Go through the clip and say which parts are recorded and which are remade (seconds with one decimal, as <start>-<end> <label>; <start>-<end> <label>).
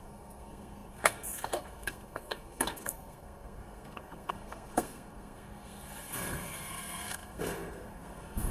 0.0-8.5 remade